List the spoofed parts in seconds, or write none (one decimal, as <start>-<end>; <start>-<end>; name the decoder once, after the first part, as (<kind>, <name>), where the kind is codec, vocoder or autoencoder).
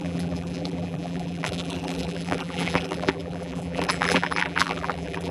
0.0-5.3 (vocoder, BigVGAN v2)